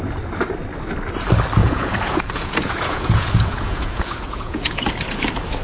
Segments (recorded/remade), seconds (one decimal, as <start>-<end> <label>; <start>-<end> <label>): 0.0-1.6 recorded; 1.6-4.9 remade; 4.9-5.6 recorded